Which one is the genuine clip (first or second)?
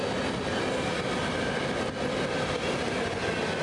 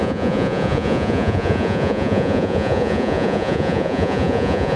first